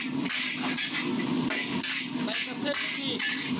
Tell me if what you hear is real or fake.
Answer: real